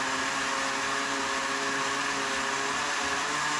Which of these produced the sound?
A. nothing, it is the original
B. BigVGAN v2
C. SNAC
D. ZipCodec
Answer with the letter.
A